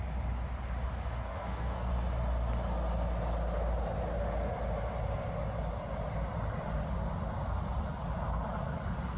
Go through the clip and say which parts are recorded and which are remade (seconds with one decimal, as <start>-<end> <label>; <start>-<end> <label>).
0.0-1.3 recorded; 1.3-1.9 remade; 1.9-9.2 recorded